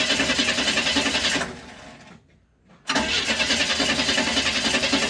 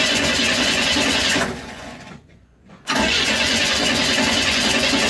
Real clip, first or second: first